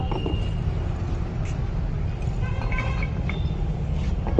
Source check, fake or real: real